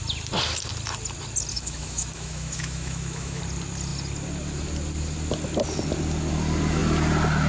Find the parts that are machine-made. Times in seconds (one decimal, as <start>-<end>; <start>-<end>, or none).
1.5-3.4